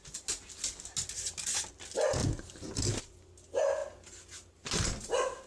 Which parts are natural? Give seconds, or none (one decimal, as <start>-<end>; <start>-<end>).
0.0-5.5